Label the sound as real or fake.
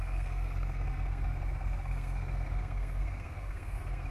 fake